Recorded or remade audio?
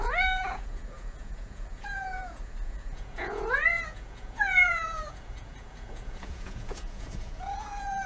remade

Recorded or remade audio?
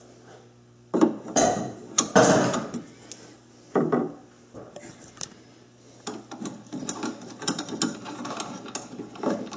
recorded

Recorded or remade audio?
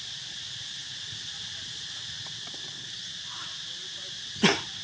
recorded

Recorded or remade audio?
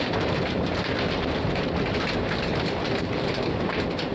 remade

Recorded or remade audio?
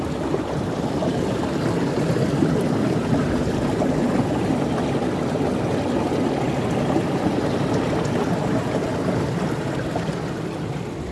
recorded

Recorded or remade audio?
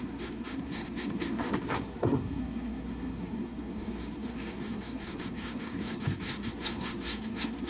remade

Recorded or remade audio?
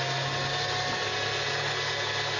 recorded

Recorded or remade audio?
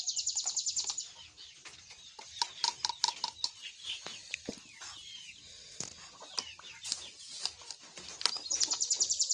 recorded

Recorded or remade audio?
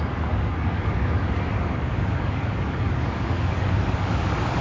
remade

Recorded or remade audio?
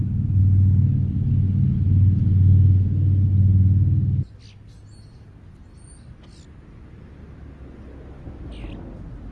recorded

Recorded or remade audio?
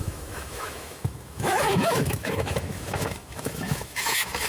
remade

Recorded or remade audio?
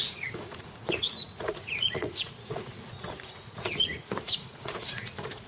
remade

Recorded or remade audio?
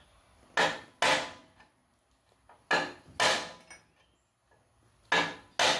recorded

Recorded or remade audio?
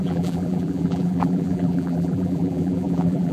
remade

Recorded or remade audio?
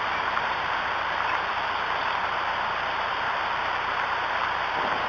remade